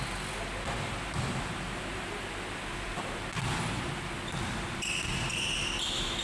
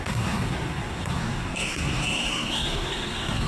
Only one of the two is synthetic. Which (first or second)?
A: second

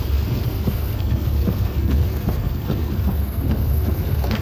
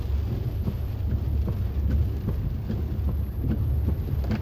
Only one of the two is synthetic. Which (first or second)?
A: first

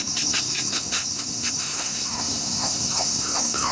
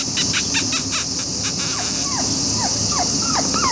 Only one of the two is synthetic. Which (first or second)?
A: first